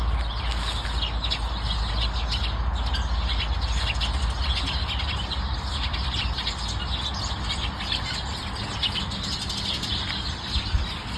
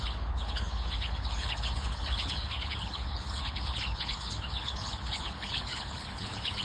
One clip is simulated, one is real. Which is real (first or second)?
first